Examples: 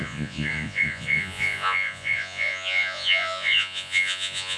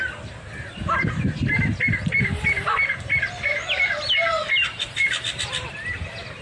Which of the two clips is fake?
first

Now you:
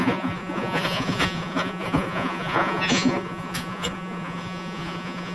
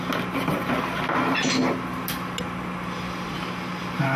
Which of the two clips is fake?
first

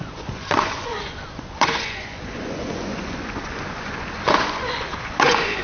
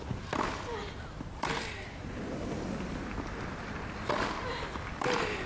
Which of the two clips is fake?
first